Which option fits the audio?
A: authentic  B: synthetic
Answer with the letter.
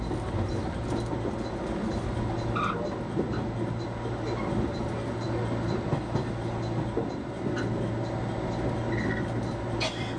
A